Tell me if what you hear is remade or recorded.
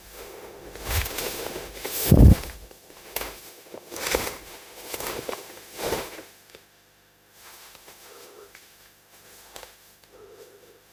remade